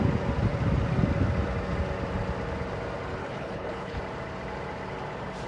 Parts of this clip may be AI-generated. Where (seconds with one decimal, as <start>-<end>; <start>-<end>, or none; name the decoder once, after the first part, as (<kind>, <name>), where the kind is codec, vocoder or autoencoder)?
3.2-4.0 (codec, HILCodec)